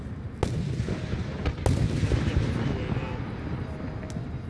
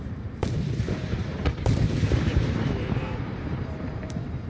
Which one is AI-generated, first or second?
second